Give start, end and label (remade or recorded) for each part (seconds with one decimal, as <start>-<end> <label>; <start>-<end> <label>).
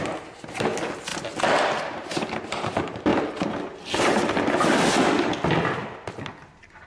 0.0-1.1 recorded; 1.1-2.6 remade; 2.6-3.1 recorded; 3.1-5.3 remade; 5.3-6.9 recorded